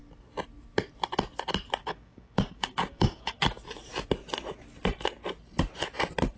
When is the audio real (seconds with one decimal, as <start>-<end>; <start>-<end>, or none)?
0.0-1.8; 3.4-6.4